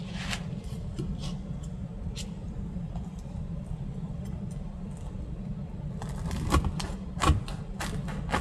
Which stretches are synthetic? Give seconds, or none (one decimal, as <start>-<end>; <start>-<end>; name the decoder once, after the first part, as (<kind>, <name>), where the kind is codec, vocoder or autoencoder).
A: 2.4-5.5 (vocoder, BigVGAN v2)